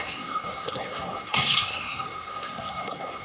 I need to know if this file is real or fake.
fake